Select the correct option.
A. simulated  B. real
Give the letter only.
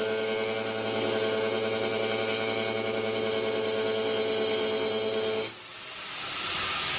B